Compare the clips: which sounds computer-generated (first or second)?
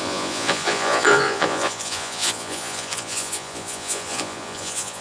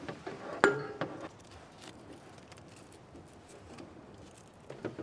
first